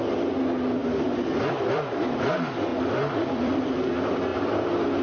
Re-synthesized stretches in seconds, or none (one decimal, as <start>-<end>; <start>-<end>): 0.8-2.3; 2.7-3.8; 4.3-5.0